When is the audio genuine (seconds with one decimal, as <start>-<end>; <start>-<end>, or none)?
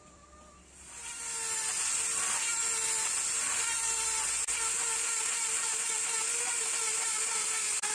0.0-7.9